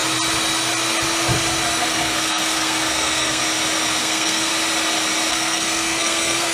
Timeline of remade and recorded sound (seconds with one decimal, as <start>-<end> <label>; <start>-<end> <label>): 0.0-1.8 recorded; 1.8-3.4 remade; 3.4-4.0 recorded; 4.0-4.5 remade; 4.5-5.3 recorded; 5.3-6.5 remade